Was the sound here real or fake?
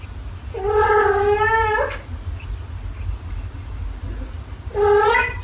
real